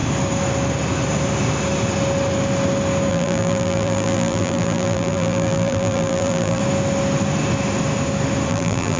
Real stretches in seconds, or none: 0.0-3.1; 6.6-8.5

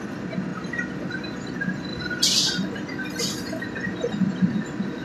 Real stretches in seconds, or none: 0.0-1.9; 2.5-5.0

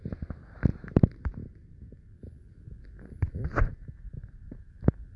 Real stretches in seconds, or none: 0.0-0.7; 1.8-3.7; 4.7-5.2

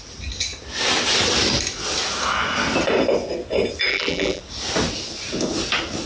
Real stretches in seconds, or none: 0.0-3.9; 4.4-6.1

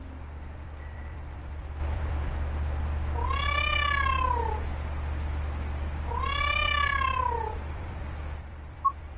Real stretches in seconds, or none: 2.3-6.4

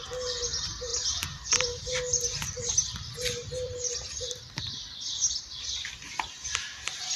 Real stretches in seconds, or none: 0.0-0.9; 2.7-3.4; 6.0-7.2

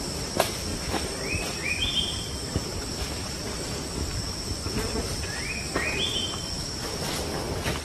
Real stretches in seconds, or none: 0.0-0.7; 4.8-7.8

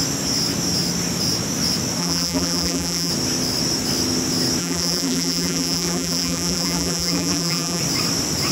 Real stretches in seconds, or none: 0.0-2.0; 3.1-4.6; 7.8-8.5